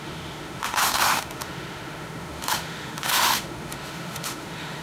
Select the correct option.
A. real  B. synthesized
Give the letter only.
B